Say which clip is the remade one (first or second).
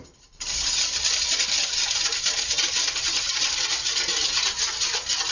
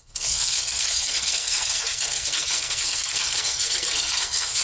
second